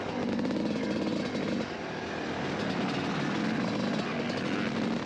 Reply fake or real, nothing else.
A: real